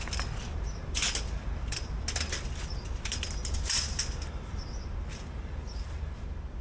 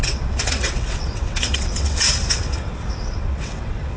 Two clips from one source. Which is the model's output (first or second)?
second